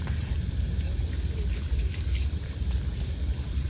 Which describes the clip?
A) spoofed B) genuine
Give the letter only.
A